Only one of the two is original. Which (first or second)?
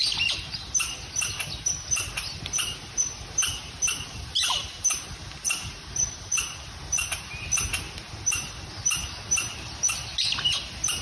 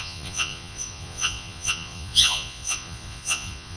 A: first